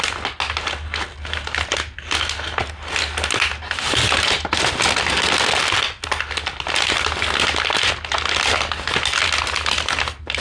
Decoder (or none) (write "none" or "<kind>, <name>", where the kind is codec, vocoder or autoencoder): none